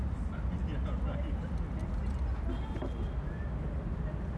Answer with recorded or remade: recorded